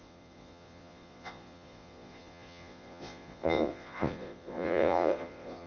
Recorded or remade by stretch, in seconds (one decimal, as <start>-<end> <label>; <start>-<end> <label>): 0.0-5.7 remade